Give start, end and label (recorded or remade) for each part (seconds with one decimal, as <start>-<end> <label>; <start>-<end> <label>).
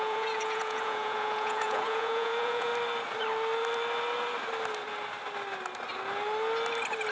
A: 0.0-2.7 remade; 2.7-7.1 recorded